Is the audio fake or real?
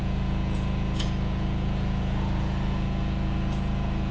fake